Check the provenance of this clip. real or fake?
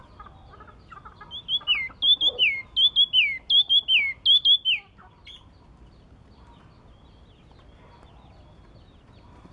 real